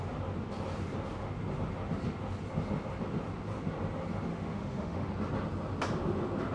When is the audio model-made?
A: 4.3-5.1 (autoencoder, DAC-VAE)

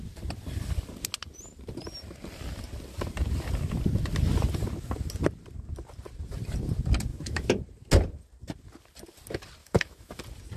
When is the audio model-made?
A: 7.1-7.6 (autoencoder, DAC-VAE); 9.6-10.2

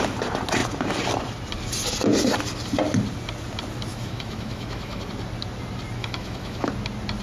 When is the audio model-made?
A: 3.9-5.1 (autoencoder, DAC-VAE); 6.0-6.7

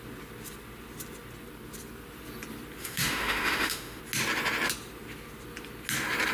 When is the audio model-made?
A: 2.8-4.0 (autoencoder, DAC-VAE)

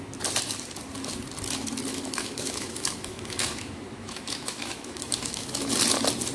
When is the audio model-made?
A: 1.9-5.7 (autoencoder, DAC-VAE)

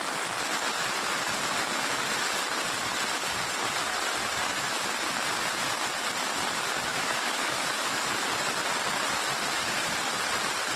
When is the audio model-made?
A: 6.9-8.0 (autoencoder, DAC-VAE)